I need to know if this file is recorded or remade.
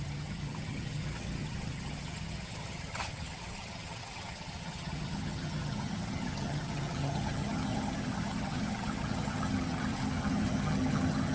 remade